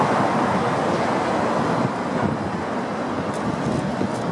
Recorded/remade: recorded